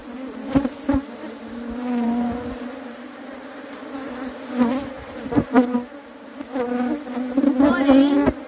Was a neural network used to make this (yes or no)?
yes